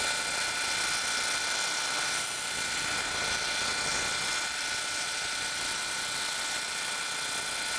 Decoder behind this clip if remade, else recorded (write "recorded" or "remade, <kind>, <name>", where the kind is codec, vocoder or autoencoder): recorded